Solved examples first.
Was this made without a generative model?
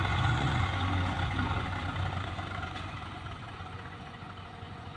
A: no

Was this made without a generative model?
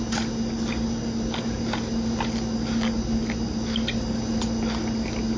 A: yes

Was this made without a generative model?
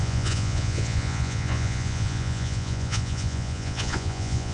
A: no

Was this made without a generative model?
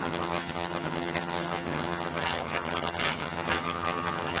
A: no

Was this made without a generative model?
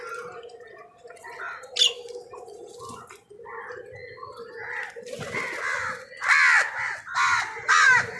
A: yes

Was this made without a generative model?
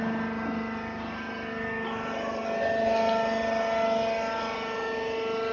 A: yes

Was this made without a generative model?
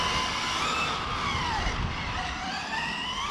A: yes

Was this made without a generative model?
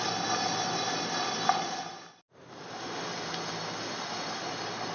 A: yes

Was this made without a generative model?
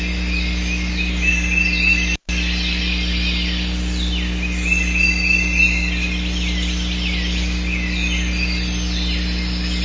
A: yes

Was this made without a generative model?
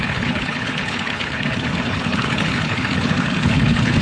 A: no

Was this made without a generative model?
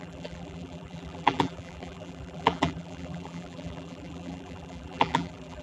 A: no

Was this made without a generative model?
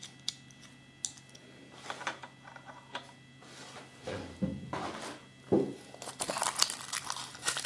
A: yes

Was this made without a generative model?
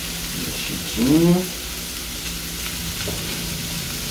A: yes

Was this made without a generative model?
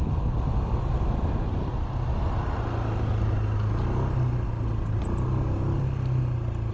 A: yes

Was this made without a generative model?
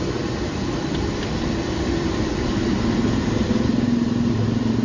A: yes